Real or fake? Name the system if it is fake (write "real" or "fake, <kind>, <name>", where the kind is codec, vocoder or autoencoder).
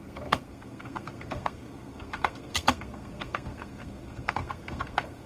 fake, codec, SNAC